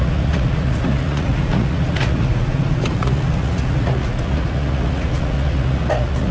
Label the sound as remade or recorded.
remade